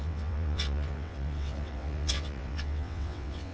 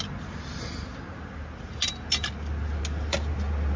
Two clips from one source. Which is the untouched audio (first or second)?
second